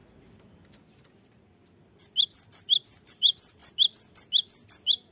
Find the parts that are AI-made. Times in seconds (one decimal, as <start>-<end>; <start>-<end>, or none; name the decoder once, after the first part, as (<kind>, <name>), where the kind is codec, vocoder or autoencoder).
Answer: 3.1-3.6 (vocoder, BigVGAN v2)